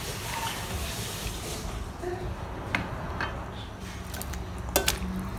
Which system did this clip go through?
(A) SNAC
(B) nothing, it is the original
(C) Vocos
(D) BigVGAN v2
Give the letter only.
B